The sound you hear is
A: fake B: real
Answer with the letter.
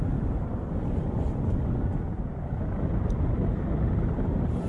B